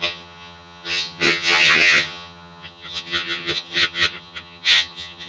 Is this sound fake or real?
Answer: fake